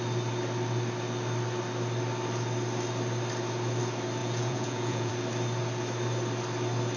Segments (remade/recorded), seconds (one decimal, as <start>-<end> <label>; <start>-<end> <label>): 0.0-4.2 recorded; 4.2-5.1 remade; 5.1-7.0 recorded